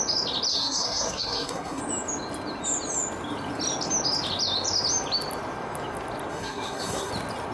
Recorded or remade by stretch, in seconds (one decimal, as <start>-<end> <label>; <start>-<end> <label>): 0.0-0.5 recorded; 0.5-1.8 remade; 1.8-6.3 recorded; 6.3-7.1 remade; 7.1-7.5 recorded

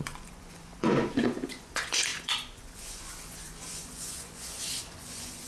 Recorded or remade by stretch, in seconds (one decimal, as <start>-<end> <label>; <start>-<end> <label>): 0.0-5.5 remade

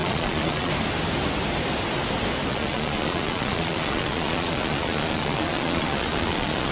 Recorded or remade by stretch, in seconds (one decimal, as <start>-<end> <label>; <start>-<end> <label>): 0.0-0.7 remade; 0.7-2.5 recorded; 2.5-6.7 remade